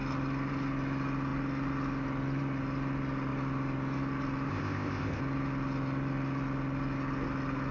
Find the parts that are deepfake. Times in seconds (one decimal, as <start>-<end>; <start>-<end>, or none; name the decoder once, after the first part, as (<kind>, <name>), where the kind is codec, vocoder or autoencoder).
4.5-5.2 (codec, ZipCodec)